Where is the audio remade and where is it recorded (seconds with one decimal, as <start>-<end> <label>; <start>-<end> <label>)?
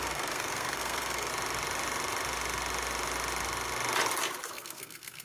0.0-1.3 remade; 1.3-4.4 recorded; 4.4-5.2 remade